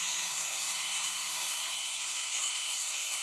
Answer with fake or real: fake